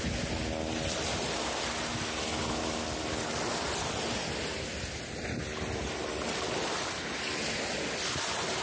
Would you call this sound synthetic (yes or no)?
no